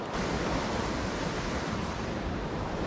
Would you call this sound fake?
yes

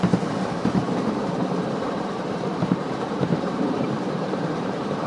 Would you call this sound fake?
yes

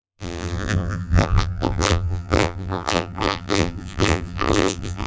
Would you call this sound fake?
yes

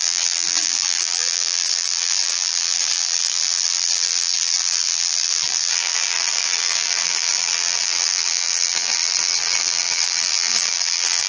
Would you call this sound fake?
yes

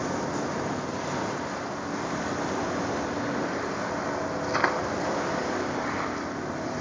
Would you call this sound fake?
no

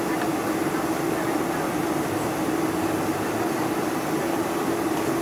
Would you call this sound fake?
no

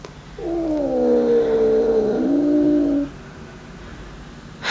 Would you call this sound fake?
no